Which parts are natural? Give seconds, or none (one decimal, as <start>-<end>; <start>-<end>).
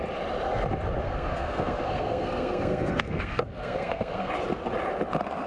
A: 0.0-1.0; 4.3-5.5